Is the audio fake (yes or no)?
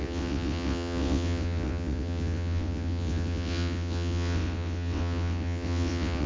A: yes